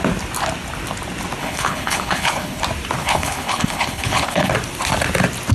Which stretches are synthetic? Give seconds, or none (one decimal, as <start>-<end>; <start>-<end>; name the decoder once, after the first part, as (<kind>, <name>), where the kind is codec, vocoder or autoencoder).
1.4-2.6 (codec, HILCodec); 3.0-4.5